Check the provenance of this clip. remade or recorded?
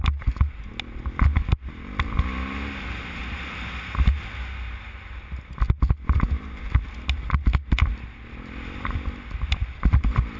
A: recorded